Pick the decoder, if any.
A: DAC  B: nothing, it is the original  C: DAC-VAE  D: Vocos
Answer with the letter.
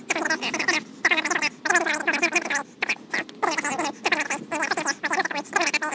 B